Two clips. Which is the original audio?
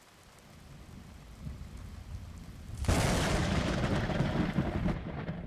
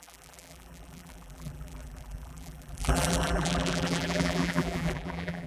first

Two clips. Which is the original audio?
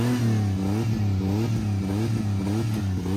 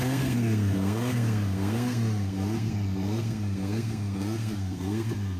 first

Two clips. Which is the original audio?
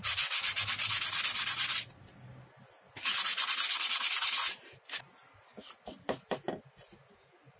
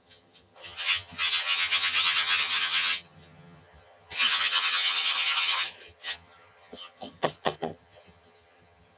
first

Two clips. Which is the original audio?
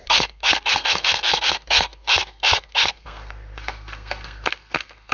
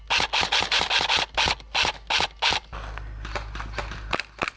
second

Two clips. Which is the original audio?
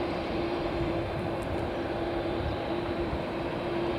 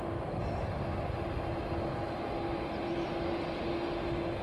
second